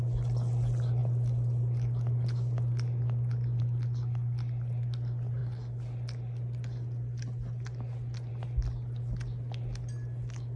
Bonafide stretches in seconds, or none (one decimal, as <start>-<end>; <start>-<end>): 0.0-10.6